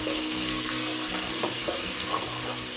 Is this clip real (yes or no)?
no